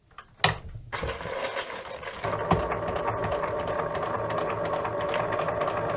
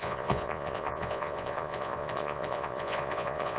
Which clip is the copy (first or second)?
second